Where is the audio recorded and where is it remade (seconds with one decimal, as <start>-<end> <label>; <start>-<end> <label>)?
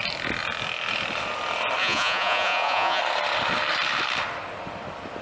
0.0-1.8 recorded; 1.8-3.0 remade; 3.0-5.2 recorded